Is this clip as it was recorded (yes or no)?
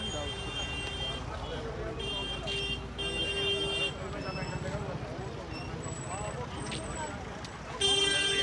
yes